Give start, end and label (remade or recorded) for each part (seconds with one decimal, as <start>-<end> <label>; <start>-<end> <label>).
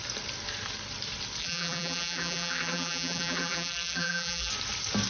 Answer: 0.0-1.4 recorded; 1.4-4.5 remade; 4.5-5.1 recorded